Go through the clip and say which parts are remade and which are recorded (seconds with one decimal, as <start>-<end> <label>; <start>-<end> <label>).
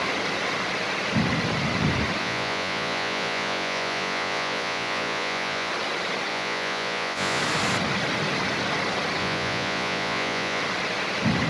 0.0-2.2 recorded; 2.2-5.7 remade; 5.7-6.3 recorded; 6.3-7.4 remade; 7.4-9.2 recorded; 9.2-10.6 remade; 10.6-11.5 recorded